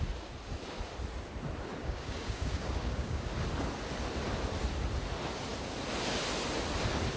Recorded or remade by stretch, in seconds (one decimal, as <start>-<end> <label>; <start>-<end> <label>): 0.0-1.8 recorded; 1.8-3.2 remade; 3.2-7.2 recorded